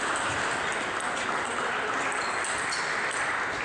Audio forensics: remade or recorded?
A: recorded